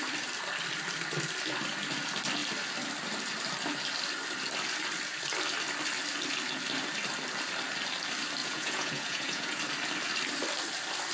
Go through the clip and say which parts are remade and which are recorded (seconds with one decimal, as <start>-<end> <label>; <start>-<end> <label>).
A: 0.0-8.4 recorded; 8.4-9.6 remade; 9.6-11.1 recorded